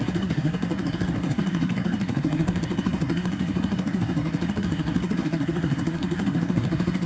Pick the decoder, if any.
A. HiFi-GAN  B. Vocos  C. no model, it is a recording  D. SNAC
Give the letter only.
D